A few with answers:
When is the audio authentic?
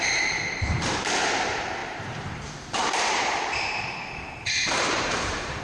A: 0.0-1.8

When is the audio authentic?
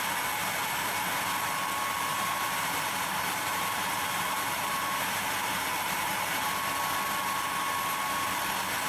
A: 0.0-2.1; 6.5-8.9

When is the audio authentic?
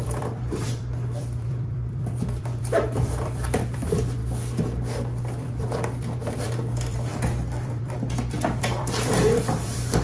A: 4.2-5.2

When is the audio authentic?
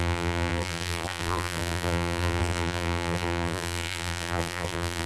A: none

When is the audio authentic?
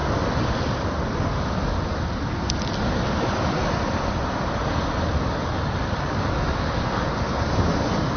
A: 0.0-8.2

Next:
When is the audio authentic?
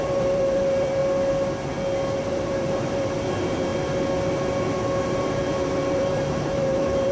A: 1.0-2.3; 3.7-5.0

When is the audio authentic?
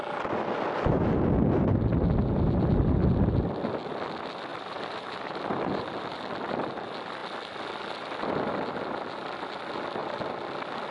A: 0.0-4.5; 6.7-10.9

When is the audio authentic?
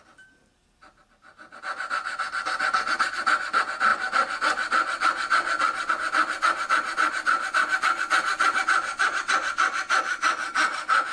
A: 0.0-11.1